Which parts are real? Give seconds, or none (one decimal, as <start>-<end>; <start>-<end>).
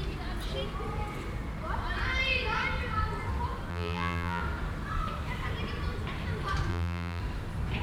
0.0-3.7; 4.4-6.7; 7.2-7.8